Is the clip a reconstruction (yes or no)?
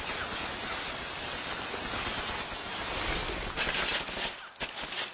no